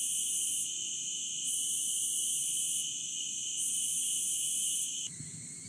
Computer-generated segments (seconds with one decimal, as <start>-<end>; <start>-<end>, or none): 3.1-5.7